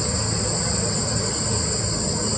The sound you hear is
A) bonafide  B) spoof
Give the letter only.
A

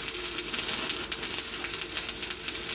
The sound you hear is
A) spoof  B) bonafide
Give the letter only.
B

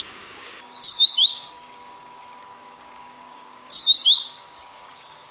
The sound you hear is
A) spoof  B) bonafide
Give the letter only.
A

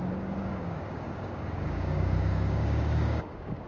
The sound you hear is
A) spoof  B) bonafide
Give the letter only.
A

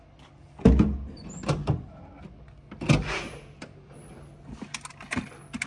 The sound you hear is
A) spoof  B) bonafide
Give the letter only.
B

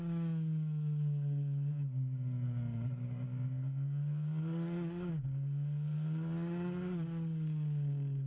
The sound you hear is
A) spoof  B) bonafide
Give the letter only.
A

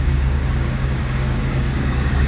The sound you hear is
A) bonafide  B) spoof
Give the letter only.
B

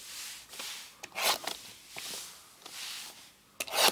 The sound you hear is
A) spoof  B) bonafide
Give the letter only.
B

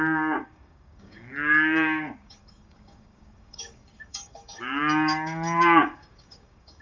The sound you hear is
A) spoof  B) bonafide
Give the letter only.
A